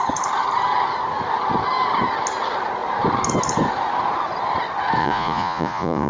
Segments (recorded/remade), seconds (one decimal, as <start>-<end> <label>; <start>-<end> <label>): 0.0-5.0 recorded; 5.0-6.1 remade